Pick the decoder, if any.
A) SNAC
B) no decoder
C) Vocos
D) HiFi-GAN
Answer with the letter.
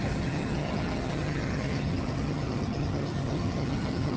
D